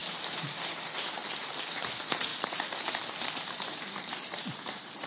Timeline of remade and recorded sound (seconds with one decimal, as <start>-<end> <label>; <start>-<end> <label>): 0.0-0.7 remade; 0.7-1.2 recorded; 1.2-1.9 remade; 1.9-2.3 recorded; 2.3-5.1 remade